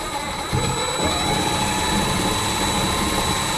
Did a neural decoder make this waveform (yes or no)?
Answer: no